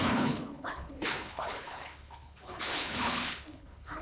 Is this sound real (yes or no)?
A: no